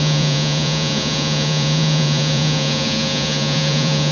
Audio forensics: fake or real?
fake